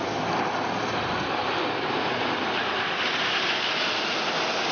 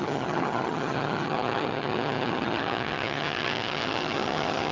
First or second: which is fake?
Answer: second